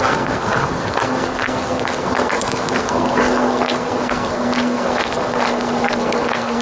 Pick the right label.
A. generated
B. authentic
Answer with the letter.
A